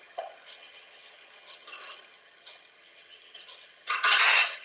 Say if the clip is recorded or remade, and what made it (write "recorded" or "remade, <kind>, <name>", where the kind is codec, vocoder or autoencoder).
remade, vocoder, HiFi-GAN